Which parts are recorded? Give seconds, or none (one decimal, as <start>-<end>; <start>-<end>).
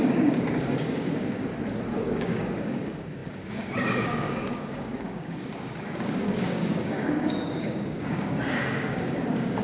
1.5-2.0